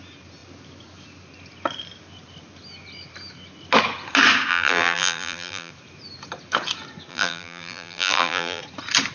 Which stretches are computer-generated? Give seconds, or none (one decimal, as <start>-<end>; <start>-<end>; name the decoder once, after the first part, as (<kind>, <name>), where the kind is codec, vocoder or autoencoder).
4.5-5.7 (vocoder, BigVGAN v2); 7.1-8.6

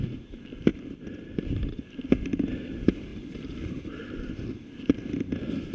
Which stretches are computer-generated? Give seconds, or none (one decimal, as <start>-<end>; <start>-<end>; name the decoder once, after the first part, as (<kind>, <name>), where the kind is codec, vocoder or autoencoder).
3.1-4.0 (vocoder, BigVGAN v2)

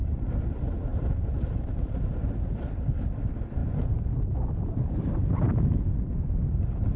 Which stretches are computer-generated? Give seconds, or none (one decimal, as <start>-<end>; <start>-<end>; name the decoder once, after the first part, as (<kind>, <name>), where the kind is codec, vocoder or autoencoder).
0.9-2.8 (vocoder, BigVGAN v2)

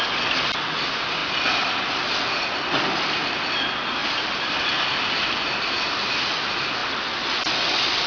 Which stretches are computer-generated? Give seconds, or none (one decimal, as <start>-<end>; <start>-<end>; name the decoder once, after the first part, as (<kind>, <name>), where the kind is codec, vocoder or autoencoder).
none

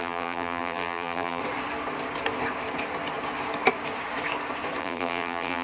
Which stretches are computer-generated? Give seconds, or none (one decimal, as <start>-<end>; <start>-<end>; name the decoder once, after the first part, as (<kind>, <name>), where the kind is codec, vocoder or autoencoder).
0.0-1.4 (vocoder, BigVGAN v2); 4.8-5.6

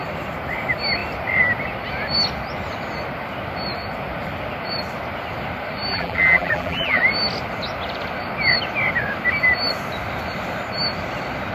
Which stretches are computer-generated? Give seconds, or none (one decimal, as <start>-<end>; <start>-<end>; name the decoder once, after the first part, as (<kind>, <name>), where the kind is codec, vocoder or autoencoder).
5.9-7.0 (vocoder, BigVGAN v2)